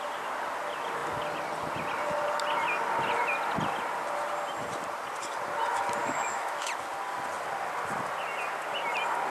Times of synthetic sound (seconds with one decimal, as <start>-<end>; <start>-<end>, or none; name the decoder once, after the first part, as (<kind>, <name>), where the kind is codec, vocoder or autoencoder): 6.0-6.7 (autoencoder, DAC-VAE)